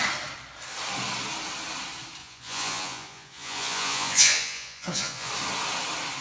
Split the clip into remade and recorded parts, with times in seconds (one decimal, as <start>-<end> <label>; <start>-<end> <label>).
0.0-2.2 recorded; 2.2-5.3 remade; 5.3-6.2 recorded